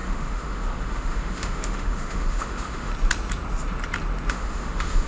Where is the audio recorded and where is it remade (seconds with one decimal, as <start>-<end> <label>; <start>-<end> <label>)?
0.0-2.9 remade; 2.9-4.3 recorded; 4.3-5.1 remade